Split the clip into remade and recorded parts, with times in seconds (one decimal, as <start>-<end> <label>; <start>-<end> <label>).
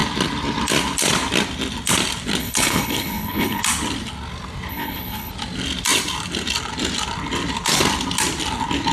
0.0-2.4 recorded; 2.4-3.6 remade; 3.6-4.7 recorded; 4.7-5.3 remade; 5.3-8.9 recorded